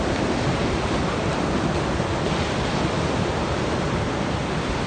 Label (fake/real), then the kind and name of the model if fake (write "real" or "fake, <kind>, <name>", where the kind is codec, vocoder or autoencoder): real